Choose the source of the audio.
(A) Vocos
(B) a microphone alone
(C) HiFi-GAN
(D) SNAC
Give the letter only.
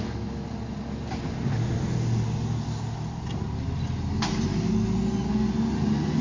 B